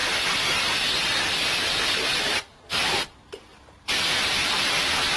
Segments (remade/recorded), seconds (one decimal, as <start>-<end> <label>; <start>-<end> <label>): 0.0-1.3 recorded; 1.3-3.5 remade; 3.5-4.2 recorded; 4.2-5.2 remade

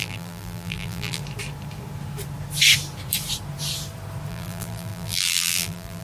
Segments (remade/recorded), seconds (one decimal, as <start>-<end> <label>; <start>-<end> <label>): 0.0-1.2 remade; 1.2-4.3 recorded; 4.3-6.0 remade

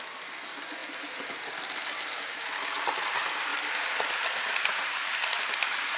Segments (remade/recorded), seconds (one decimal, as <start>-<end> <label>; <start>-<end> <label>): 0.0-6.0 recorded

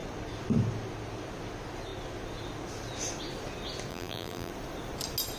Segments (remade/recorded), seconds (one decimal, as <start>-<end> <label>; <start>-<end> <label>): 0.0-3.9 recorded; 3.9-4.5 remade; 4.5-5.4 recorded

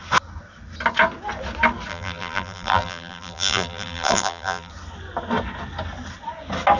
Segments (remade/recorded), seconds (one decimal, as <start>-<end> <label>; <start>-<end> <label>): 0.0-1.9 recorded; 1.9-4.7 remade; 4.7-6.8 recorded

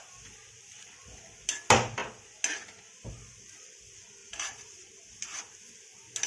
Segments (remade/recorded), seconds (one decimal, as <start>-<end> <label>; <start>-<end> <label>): 0.0-4.2 recorded; 4.2-5.4 remade; 5.4-6.3 recorded

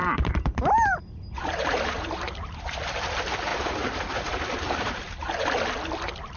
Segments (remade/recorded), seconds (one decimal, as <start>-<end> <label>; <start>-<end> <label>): 0.0-2.6 remade; 2.6-3.5 recorded; 3.5-5.3 remade; 5.3-6.4 recorded

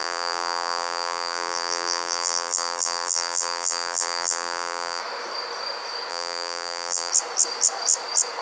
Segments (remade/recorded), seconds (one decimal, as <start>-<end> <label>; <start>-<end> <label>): 0.0-5.0 remade; 5.0-6.1 recorded; 6.1-7.1 remade; 7.1-8.4 recorded